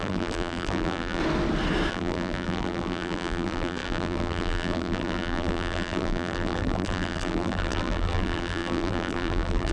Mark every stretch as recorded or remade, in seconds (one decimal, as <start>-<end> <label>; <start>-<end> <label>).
0.0-1.2 remade; 1.2-1.9 recorded; 1.9-9.7 remade

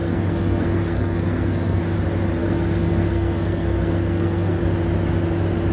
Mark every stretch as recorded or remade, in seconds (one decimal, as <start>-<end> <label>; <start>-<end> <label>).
0.0-1.8 remade; 1.8-2.4 recorded; 2.4-4.6 remade; 4.6-5.7 recorded

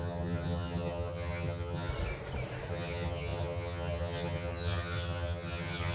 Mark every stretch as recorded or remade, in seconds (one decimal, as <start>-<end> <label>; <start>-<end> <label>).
0.0-1.9 remade; 1.9-2.7 recorded; 2.7-5.9 remade

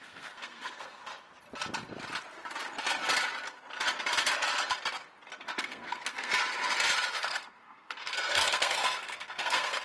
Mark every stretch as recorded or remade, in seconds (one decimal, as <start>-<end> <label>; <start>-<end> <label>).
0.0-1.0 remade; 1.0-5.6 recorded; 5.6-6.3 remade; 6.3-7.1 recorded; 7.1-9.8 remade

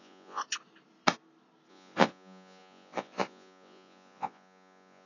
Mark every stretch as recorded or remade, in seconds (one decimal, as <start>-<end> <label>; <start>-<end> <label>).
0.0-0.4 remade; 0.4-1.7 recorded; 1.7-5.1 remade

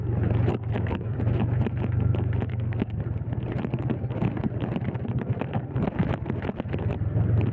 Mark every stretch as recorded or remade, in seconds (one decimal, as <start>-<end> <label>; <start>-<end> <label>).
0.0-0.5 recorded; 0.5-1.2 remade; 1.2-2.5 recorded; 2.5-3.0 remade; 3.0-7.5 recorded